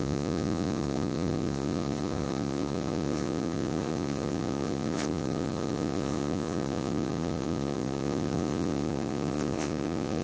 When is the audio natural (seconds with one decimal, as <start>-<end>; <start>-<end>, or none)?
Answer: none